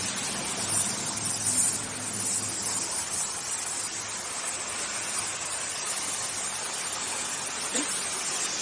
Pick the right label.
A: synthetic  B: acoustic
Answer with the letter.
B